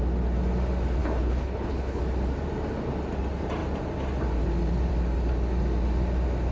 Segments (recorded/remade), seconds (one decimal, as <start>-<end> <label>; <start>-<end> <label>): 0.0-1.0 recorded; 1.0-2.0 remade; 2.0-6.5 recorded